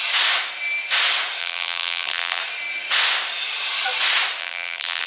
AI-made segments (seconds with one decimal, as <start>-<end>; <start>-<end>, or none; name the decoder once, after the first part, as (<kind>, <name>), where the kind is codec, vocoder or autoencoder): 1.4-2.4 (vocoder, BigVGAN v2); 4.4-5.1